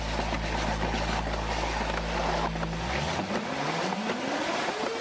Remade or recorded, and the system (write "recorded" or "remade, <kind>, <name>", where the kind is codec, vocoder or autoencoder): recorded